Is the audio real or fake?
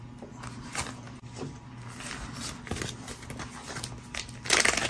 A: real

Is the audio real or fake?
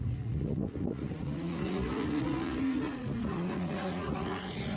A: fake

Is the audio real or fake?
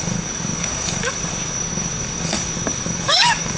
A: fake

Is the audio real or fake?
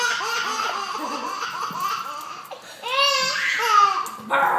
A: real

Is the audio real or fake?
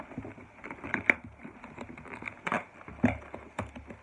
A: real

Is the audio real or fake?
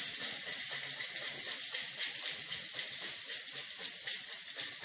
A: real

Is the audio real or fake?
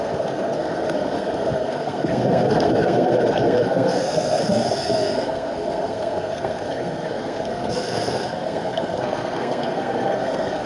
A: fake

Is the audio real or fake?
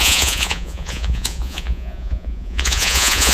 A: fake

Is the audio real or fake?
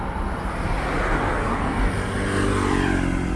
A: real